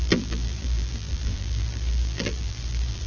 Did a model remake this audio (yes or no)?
yes